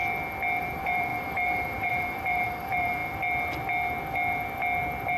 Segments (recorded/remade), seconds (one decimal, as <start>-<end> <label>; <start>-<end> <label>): 0.0-0.6 recorded; 0.6-3.0 remade; 3.0-5.2 recorded